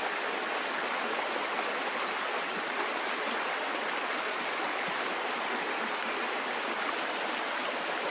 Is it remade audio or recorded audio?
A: recorded